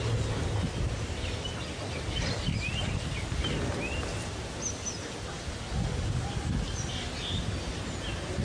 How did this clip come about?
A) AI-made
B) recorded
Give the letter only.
B